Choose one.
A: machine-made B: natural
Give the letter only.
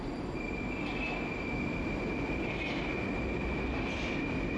B